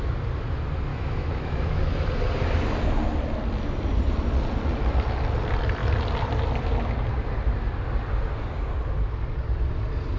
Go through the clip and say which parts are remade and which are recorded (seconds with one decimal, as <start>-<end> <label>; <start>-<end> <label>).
0.0-0.9 recorded; 0.9-1.8 remade; 1.8-10.2 recorded